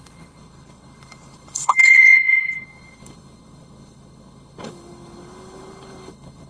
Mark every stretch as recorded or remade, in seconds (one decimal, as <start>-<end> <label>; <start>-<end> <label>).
0.0-6.5 remade

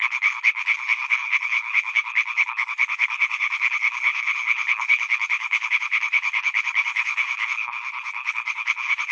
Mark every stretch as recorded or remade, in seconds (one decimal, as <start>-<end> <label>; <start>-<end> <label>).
0.0-9.1 remade